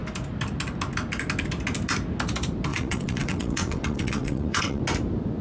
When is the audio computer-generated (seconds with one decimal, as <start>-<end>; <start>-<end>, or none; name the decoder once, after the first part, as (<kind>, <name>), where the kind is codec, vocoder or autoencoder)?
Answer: 2.7-4.8 (vocoder, WaveNeXt)